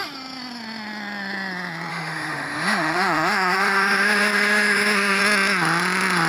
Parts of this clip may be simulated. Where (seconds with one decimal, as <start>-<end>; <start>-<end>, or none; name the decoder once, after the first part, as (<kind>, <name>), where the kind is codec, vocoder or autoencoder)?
1.9-5.2 (autoencoder, DAC-VAE)